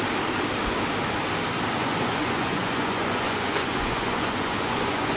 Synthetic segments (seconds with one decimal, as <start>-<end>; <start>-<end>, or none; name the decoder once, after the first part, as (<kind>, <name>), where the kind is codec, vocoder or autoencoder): 1.8-5.2 (vocoder, Vocos)